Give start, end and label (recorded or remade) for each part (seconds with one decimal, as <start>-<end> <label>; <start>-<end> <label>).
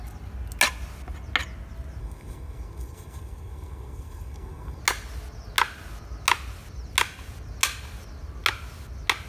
0.0-2.0 recorded; 2.0-4.8 remade; 4.8-9.3 recorded